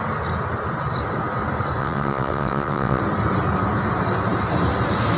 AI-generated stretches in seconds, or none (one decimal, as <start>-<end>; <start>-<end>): 1.8-3.0